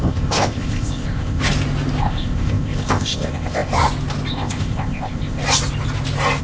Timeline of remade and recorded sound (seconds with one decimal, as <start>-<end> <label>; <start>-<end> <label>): 0.0-1.4 remade; 1.4-2.0 recorded; 2.0-3.7 remade; 3.7-4.3 recorded; 4.3-5.4 remade; 5.4-6.4 recorded